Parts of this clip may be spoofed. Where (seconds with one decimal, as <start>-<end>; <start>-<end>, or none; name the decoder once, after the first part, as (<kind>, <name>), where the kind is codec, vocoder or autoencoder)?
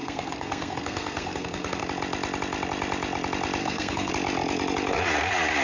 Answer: 0.0-1.8 (codec, SNAC); 3.6-4.1